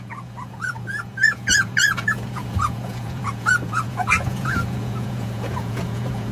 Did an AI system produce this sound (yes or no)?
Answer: yes